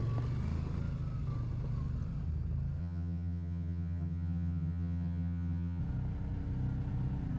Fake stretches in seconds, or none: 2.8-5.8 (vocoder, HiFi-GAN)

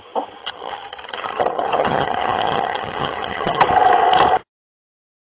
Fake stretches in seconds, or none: 0.4-3.6 (vocoder, HiFi-GAN)

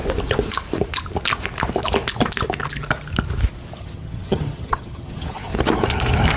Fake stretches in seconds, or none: 3.8-5.5 (vocoder, HiFi-GAN)

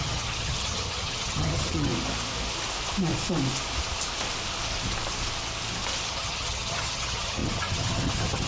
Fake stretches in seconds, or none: 0.0-1.9 (vocoder, HiFi-GAN); 6.1-8.5

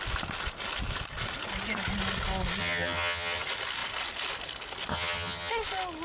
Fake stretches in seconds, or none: 2.6-3.4 (vocoder, HiFi-GAN); 4.9-5.5

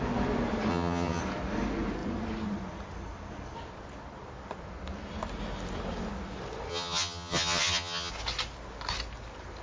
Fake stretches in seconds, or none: 0.7-1.2 (vocoder, HiFi-GAN); 6.7-8.1

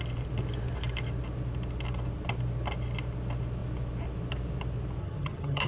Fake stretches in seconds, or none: 5.0-5.7 (vocoder, HiFi-GAN)

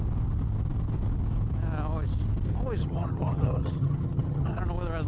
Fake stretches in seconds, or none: 2.8-4.6 (vocoder, HiFi-GAN)